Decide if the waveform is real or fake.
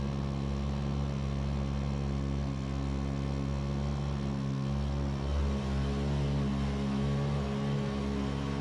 real